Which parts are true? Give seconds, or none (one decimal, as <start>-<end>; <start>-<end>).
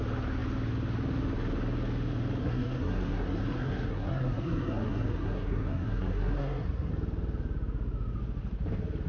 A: 0.0-2.4; 6.9-9.1